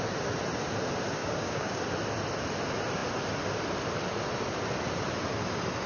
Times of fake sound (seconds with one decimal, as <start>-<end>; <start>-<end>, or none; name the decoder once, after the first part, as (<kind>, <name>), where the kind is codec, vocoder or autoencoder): 1.2-1.8 (codec, DAC)